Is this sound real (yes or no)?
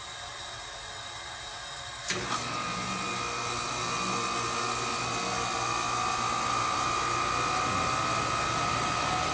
yes